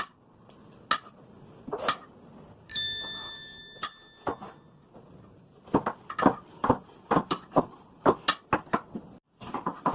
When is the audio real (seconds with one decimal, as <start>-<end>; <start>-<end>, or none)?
0.0-2.7; 3.6-9.9